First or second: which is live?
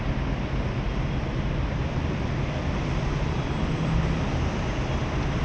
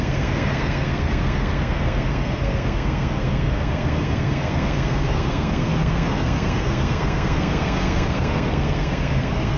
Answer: first